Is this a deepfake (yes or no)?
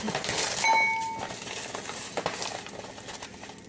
no